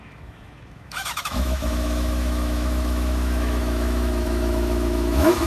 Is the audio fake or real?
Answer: fake